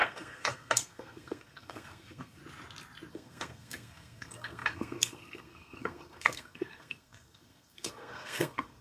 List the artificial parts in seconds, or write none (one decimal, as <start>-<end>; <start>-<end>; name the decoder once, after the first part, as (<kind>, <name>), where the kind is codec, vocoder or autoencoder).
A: 0.0-2.4 (codec, SNAC); 3.1-8.8